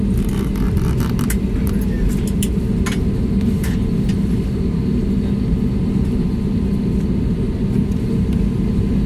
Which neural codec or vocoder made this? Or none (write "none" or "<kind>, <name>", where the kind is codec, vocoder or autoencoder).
none